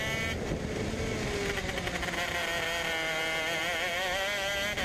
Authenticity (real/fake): real